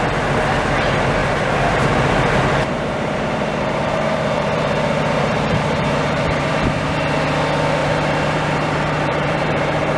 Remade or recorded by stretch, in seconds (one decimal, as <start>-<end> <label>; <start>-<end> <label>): 0.0-1.2 recorded; 1.2-6.5 remade; 6.5-7.8 recorded; 7.8-10.0 remade